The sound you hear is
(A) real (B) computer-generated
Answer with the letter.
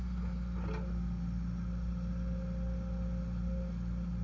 A